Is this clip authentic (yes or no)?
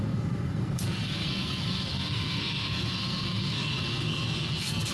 no